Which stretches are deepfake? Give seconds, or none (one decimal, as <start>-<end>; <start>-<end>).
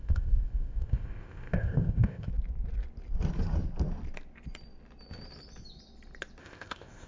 0.0-2.3; 6.4-7.1